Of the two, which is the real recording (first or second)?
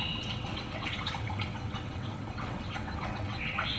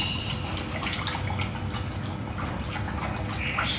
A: second